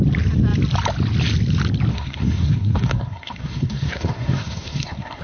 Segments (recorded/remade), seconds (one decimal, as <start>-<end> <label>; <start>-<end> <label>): 0.0-1.9 recorded; 1.9-5.2 remade